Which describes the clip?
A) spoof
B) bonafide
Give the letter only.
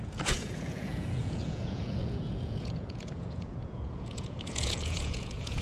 A